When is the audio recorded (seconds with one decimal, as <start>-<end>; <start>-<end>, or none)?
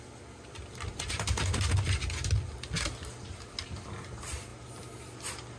0.0-5.6